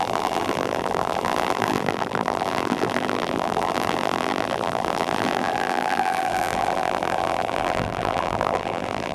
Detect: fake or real fake